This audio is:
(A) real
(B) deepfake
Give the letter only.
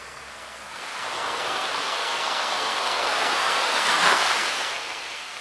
B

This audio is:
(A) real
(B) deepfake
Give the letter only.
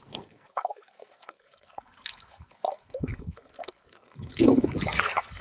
B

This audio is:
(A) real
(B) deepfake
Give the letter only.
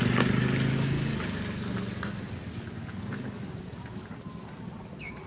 A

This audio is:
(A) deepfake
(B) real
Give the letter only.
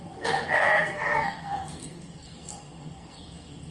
A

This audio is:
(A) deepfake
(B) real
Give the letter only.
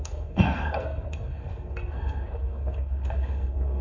A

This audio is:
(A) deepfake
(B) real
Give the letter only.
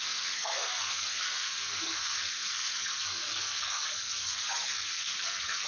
A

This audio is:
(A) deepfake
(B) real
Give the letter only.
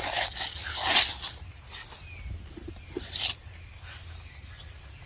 B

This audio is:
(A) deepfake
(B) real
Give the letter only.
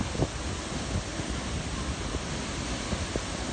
B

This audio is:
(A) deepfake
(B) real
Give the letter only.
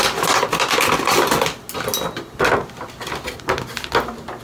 B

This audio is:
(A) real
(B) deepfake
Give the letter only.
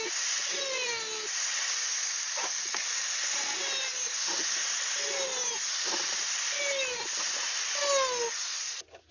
A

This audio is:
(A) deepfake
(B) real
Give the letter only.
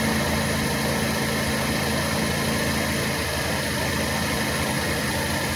B